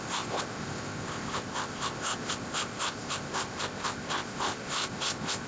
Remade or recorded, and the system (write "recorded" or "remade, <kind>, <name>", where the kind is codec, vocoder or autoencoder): remade, codec, ZipCodec